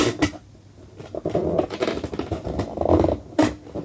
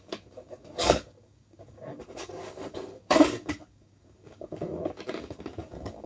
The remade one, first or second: second